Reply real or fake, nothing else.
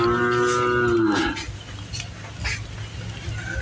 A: real